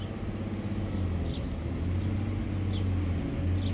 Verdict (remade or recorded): recorded